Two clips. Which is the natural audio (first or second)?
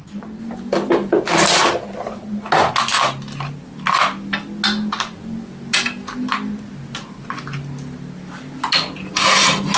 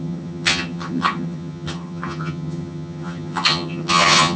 first